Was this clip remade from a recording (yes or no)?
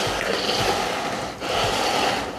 no